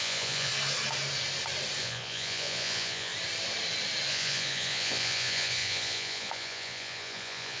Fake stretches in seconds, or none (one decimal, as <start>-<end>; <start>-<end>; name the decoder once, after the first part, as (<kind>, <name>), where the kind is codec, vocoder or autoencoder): 0.0-0.5 (vocoder, Vocos); 1.8-3.1; 4.1-7.6